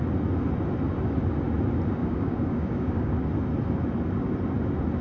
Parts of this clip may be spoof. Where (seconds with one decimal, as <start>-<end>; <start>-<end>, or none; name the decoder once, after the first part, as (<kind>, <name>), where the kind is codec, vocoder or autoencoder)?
2.0-3.1 (codec, DAC)